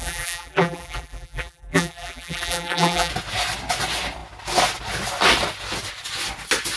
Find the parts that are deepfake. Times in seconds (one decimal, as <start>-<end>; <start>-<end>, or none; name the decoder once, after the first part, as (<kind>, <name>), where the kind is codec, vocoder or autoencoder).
0.0-3.1 (vocoder, BigVGAN v2)